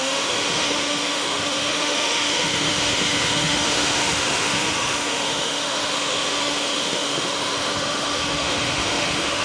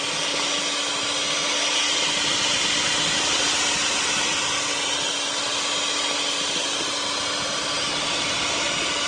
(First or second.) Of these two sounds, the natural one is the second